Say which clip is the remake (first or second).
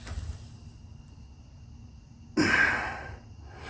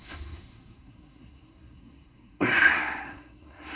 second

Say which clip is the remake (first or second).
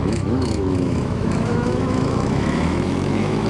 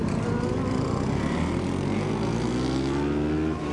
first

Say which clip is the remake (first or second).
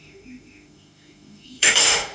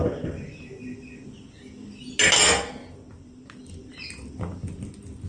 first